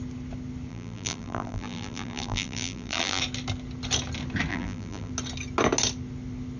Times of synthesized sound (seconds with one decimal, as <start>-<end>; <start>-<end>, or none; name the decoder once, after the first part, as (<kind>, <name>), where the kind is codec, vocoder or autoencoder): 0.7-3.2 (vocoder, BigVGAN v2); 4.5-5.1

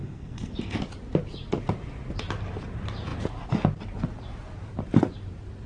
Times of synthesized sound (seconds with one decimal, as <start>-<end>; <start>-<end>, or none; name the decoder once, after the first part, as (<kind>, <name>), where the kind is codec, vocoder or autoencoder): 0.0-0.8 (codec, SNAC)